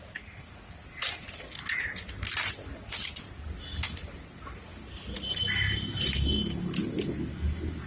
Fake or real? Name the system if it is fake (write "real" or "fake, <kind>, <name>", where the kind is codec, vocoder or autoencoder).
real